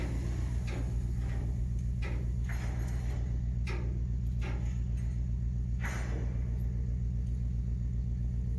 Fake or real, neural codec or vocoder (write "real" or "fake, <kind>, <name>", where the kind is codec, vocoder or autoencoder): real